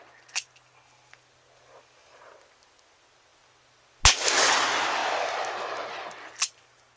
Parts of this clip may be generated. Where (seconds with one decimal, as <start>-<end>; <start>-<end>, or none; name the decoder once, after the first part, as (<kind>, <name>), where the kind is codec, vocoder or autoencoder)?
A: none